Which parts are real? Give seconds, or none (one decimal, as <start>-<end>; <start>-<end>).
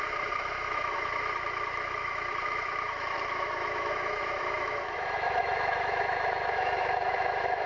none